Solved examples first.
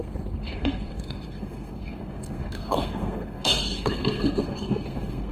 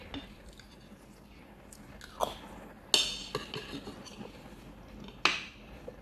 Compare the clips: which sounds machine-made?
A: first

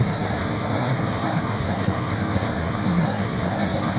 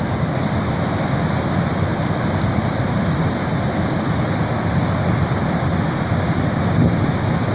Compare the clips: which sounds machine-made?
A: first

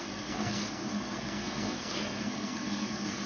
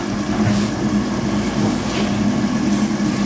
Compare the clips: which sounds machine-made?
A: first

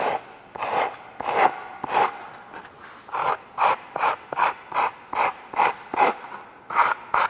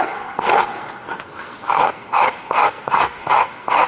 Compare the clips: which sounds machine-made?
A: second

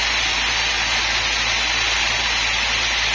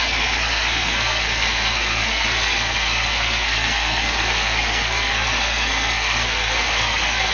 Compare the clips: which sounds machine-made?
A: second